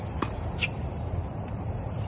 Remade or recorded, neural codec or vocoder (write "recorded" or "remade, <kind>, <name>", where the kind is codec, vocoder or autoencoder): remade, vocoder, BigVGAN v2